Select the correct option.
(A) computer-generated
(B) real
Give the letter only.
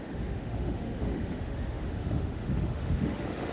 A